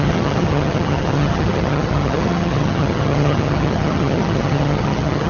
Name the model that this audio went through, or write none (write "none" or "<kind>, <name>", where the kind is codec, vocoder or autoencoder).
vocoder, HiFi-GAN